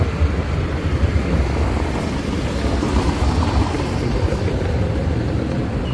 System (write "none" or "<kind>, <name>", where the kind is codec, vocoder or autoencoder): none